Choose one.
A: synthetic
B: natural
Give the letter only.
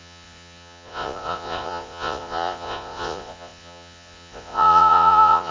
A